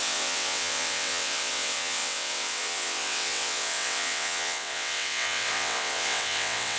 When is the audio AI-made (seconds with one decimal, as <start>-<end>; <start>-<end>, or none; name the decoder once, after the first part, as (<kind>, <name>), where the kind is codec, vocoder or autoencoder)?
0.0-6.8 (vocoder, WaveNeXt)